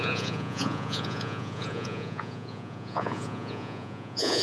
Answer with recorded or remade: remade